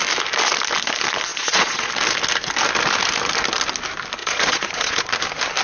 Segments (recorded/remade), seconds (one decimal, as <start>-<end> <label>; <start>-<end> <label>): 0.0-1.3 recorded; 1.3-1.9 remade; 1.9-4.2 recorded; 4.2-5.1 remade; 5.1-5.6 recorded